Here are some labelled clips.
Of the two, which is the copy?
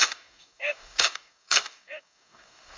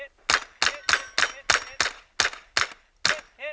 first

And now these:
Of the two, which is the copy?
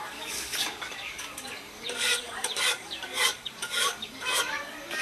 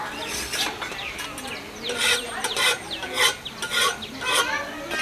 first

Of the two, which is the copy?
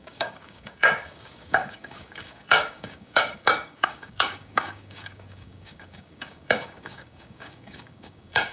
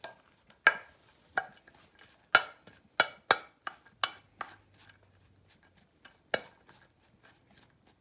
first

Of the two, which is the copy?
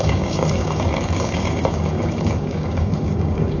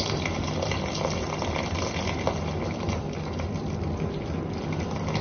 first